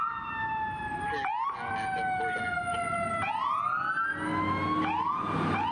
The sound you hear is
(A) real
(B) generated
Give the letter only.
A